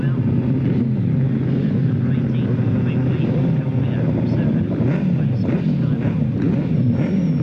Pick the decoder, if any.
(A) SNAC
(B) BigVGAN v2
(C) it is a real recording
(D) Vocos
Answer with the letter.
C